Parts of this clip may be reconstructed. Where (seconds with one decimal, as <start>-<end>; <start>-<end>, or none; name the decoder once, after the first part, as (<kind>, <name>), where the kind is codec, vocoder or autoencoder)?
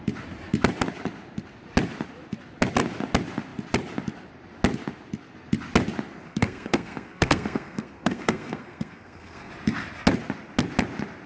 6.3-9.5 (codec, SNAC)